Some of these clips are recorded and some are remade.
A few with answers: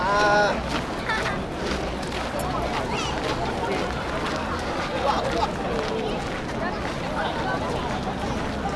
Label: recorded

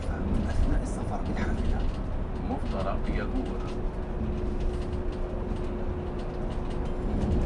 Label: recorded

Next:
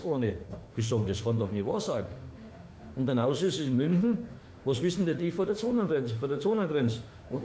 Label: remade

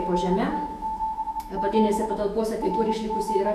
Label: remade